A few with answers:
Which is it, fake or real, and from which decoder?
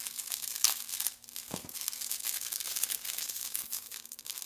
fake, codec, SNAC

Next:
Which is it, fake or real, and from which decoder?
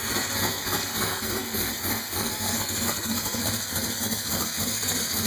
fake, codec, SNAC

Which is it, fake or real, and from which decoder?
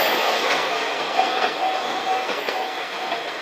fake, codec, SNAC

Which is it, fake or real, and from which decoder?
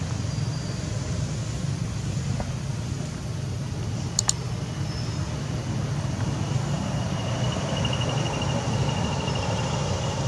real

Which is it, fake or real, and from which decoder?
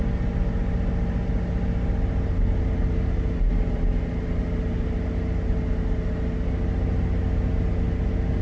real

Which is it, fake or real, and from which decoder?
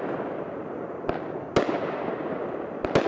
real